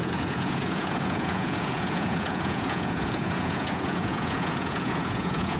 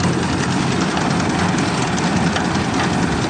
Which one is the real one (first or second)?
second